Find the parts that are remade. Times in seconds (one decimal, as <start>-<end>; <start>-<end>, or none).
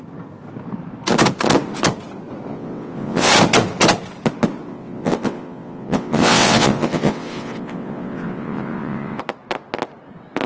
2.5-3.3; 4.7-9.2